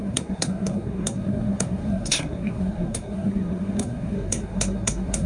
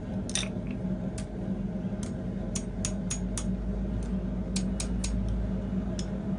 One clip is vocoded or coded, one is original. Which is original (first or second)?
second